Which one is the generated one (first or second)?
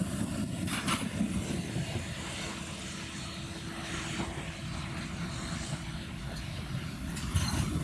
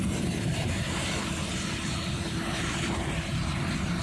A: second